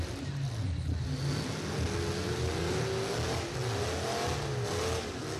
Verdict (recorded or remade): recorded